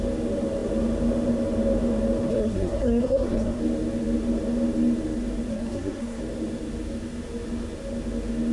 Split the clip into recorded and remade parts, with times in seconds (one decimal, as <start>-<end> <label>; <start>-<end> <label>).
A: 0.0-2.3 recorded; 2.3-3.6 remade; 3.6-5.5 recorded; 5.5-6.2 remade; 6.2-8.5 recorded